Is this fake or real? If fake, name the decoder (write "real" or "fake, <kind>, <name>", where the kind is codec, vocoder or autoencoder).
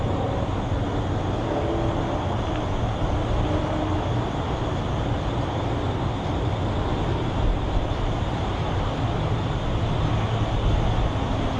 real